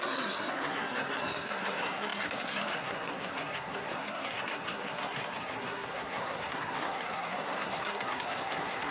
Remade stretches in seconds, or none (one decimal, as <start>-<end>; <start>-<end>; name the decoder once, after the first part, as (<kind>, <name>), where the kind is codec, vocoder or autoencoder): 0.0-8.9 (codec, SNAC)